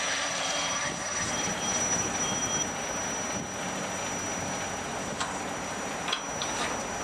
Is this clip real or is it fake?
real